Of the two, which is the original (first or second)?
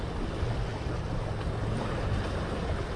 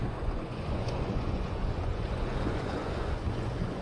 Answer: first